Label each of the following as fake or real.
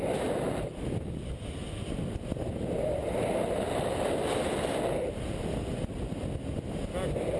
real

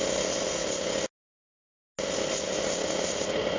real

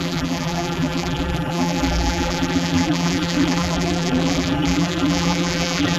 fake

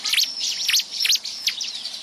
fake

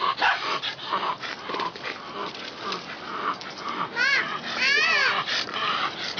real